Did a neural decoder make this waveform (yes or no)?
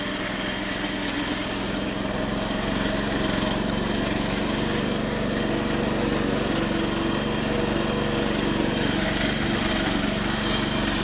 no